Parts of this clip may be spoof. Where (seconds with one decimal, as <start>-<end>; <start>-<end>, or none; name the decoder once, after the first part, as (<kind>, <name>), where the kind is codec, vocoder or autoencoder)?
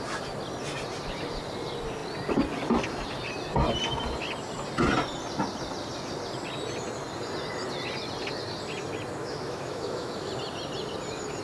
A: 9.2-10.3 (autoencoder, DAC-VAE)